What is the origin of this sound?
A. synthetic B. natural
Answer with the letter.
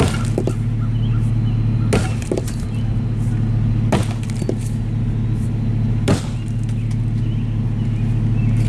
B